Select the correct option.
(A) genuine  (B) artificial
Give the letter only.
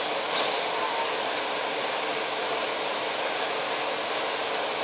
A